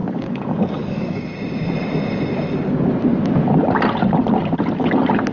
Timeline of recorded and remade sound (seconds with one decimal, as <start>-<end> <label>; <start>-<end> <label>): 0.0-1.2 remade; 1.2-5.3 recorded